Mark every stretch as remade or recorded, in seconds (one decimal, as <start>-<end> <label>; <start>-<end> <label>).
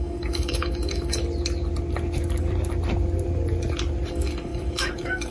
0.0-1.2 remade; 1.2-4.1 recorded; 4.1-5.3 remade